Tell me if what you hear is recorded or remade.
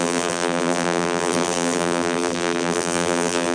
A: remade